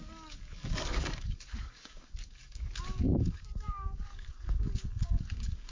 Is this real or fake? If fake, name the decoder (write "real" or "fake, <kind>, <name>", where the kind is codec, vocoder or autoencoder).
fake, codec, DAC